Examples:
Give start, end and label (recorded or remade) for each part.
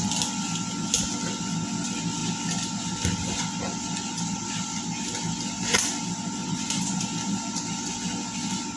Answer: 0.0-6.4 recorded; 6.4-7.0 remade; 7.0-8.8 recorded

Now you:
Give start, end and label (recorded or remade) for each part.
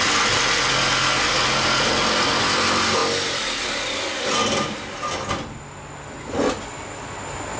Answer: 0.0-7.6 recorded